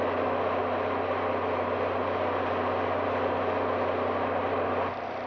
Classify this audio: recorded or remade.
recorded